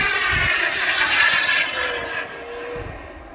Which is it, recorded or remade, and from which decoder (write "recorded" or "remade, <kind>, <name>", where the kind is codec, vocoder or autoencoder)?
recorded